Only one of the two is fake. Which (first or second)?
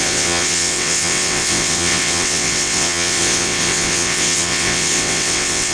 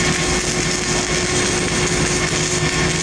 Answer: first